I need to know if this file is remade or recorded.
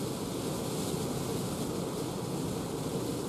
recorded